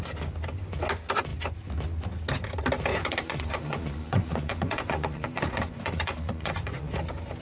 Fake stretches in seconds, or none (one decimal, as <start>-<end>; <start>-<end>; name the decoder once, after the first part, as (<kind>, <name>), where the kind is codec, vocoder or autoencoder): 2.9-6.9 (vocoder, Vocos)